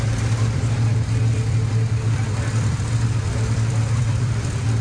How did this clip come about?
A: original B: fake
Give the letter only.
B